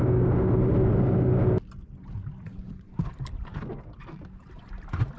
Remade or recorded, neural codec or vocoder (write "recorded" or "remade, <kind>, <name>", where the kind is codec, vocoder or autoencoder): recorded